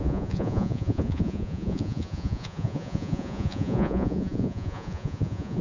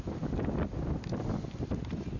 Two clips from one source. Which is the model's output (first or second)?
first